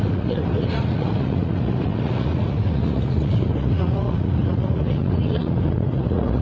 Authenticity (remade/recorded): remade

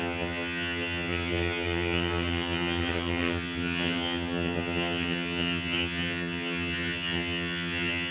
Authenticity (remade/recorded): remade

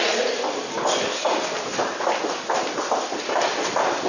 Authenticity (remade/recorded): recorded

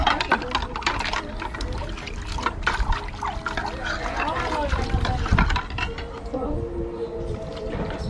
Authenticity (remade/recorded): recorded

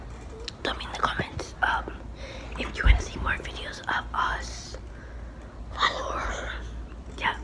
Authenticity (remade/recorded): recorded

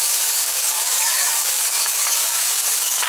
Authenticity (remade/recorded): remade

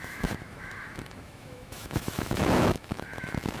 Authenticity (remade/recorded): remade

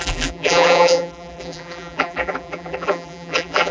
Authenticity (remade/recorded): remade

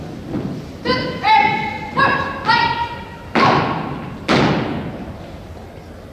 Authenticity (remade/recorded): recorded